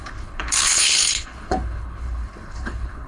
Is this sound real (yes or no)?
no